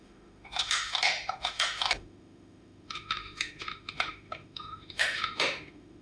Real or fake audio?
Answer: fake